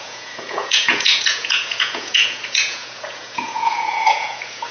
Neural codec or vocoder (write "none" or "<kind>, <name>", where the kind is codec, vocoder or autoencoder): vocoder, Vocos